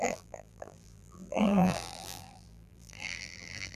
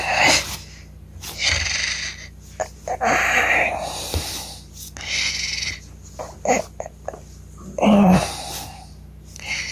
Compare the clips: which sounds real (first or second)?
second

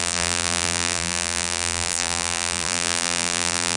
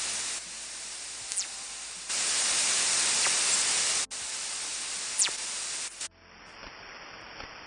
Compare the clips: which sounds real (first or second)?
second